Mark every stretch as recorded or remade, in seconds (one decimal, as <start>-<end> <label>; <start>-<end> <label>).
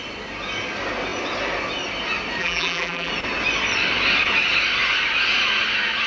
0.0-2.4 recorded; 2.4-3.1 remade; 3.1-6.1 recorded